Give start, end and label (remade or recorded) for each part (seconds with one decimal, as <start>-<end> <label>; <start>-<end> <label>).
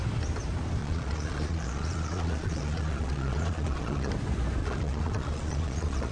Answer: 0.0-0.8 recorded; 0.8-4.1 remade; 4.1-4.6 recorded; 4.6-6.1 remade